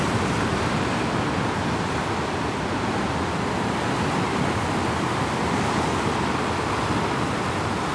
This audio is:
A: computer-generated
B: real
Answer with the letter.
B